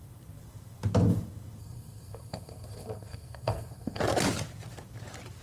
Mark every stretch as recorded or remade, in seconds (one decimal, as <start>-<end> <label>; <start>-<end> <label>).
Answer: 0.0-1.6 recorded; 1.6-4.0 remade; 4.0-5.4 recorded